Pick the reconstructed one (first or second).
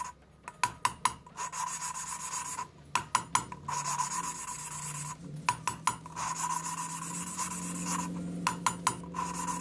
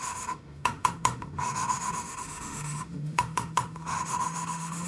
second